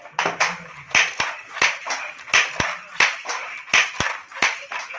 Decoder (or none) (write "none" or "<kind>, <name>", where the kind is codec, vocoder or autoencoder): none